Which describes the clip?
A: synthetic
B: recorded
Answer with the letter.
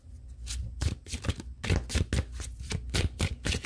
B